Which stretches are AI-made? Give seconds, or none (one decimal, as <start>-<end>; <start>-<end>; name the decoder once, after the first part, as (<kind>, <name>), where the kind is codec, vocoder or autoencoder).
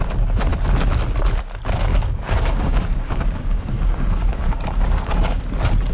1.9-5.4 (codec, DAC)